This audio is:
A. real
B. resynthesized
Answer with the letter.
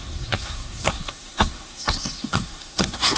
B